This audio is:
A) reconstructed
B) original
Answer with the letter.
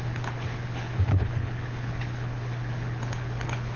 A